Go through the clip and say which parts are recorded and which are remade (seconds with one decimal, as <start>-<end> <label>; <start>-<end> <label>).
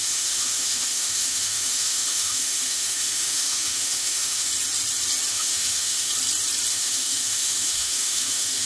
0.0-4.5 remade; 4.5-5.3 recorded; 5.3-6.1 remade; 6.1-6.7 recorded; 6.7-8.6 remade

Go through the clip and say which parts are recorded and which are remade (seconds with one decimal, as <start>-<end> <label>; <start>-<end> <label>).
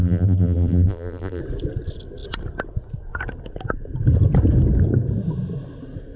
0.0-1.4 remade; 1.4-6.2 recorded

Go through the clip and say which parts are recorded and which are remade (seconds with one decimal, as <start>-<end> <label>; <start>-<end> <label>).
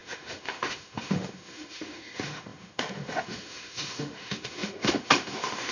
0.0-5.7 remade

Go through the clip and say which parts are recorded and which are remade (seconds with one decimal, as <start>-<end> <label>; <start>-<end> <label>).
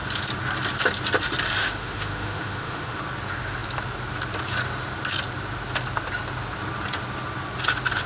0.0-1.6 recorded; 1.6-3.0 remade; 3.0-8.1 recorded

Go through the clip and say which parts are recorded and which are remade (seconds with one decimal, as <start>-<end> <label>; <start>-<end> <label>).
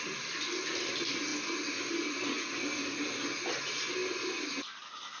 0.0-5.2 recorded